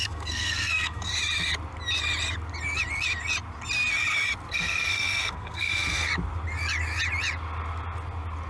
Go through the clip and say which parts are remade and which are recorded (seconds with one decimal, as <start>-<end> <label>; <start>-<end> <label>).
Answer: 0.0-1.1 remade; 1.1-4.5 recorded; 4.5-6.1 remade; 6.1-8.5 recorded